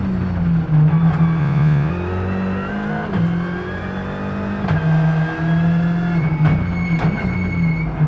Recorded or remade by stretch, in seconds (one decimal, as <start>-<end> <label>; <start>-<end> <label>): 0.0-1.4 recorded; 1.4-1.9 remade; 1.9-8.1 recorded